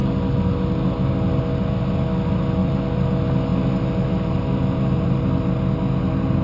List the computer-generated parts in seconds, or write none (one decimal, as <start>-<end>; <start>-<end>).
2.6-3.1